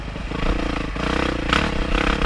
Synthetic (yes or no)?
no